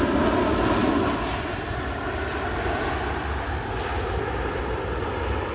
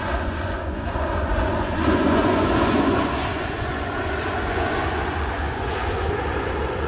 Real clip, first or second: first